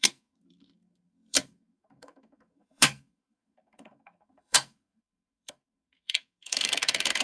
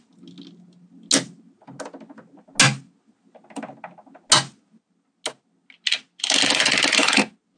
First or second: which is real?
second